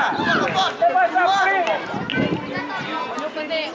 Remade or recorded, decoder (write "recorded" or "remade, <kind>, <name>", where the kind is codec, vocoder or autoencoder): recorded